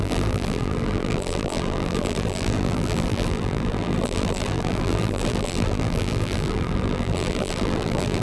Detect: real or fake fake